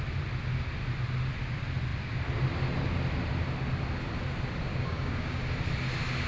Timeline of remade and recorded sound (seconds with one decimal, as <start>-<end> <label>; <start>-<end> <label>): 0.0-4.7 recorded; 4.7-5.4 remade; 5.4-6.3 recorded

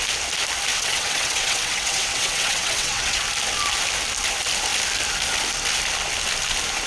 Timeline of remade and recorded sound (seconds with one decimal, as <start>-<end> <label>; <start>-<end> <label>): 0.0-0.7 recorded; 0.7-3.2 remade; 3.2-6.9 recorded

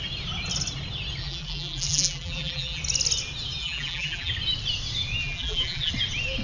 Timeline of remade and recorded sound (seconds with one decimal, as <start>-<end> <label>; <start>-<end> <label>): 0.0-1.2 recorded; 1.2-2.8 remade; 2.8-3.6 recorded; 3.6-4.3 remade; 4.3-5.2 recorded; 5.2-5.9 remade; 5.9-6.4 recorded

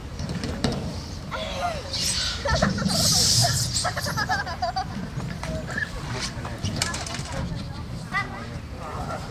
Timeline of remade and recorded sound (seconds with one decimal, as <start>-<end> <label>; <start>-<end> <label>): 0.0-3.4 remade; 3.4-6.4 recorded; 6.4-7.1 remade; 7.1-7.9 recorded; 7.9-9.3 remade

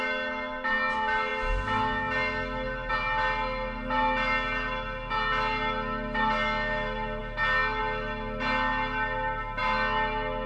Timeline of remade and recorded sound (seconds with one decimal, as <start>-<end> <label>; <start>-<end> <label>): 0.0-10.5 recorded

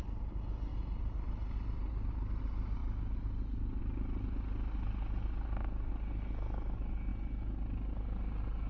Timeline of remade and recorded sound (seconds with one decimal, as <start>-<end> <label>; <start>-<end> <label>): 0.0-8.7 recorded

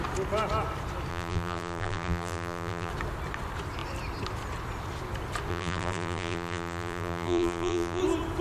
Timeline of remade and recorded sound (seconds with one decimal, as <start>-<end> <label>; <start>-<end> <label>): 0.0-1.1 recorded; 1.1-2.9 remade; 2.9-5.5 recorded; 5.5-8.0 remade; 8.0-8.4 recorded